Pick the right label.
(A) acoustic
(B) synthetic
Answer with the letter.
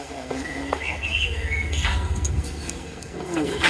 B